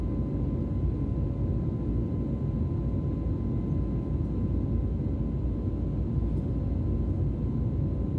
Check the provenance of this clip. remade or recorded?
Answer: recorded